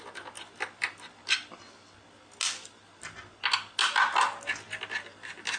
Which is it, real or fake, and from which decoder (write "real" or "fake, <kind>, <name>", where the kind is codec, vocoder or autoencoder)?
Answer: real